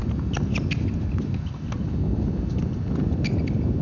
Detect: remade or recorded recorded